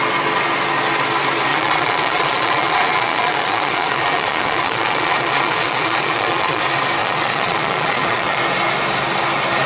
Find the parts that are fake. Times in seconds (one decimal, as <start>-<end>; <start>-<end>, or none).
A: 1.5-6.6; 7.0-8.4